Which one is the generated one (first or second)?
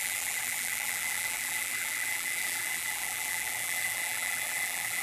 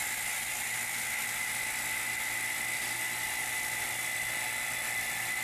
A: first